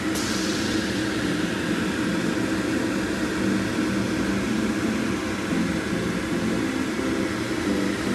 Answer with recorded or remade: recorded